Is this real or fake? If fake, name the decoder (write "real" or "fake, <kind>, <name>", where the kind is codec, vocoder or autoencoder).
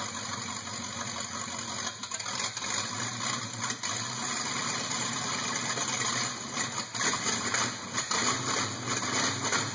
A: real